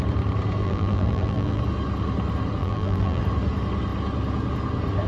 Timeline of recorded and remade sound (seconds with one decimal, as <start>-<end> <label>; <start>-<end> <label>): 0.0-0.6 recorded; 0.6-1.6 remade; 1.6-2.6 recorded; 2.6-3.2 remade; 3.2-5.1 recorded